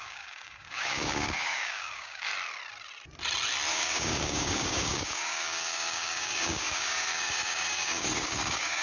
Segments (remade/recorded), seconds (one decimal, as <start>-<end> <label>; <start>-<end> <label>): 0.0-2.3 remade; 2.3-3.7 recorded; 3.7-8.8 remade